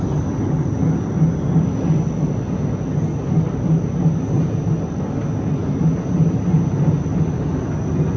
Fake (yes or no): no